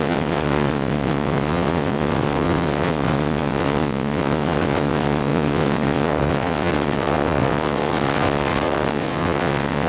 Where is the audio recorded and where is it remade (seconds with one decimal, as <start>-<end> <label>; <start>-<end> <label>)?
0.0-9.9 remade